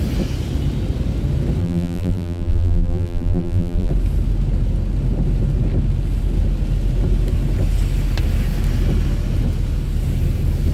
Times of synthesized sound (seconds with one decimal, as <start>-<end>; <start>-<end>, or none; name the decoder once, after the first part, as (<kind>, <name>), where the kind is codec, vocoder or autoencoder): 1.6-3.9 (vocoder, BigVGAN v2)